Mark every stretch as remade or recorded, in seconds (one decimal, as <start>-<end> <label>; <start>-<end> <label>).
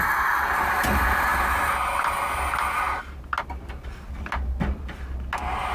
0.0-5.7 recorded